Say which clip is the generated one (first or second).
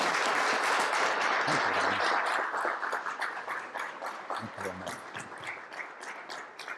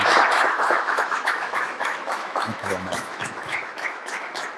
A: second